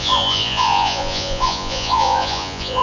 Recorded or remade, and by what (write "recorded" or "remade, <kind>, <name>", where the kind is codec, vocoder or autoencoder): remade, vocoder, Vocos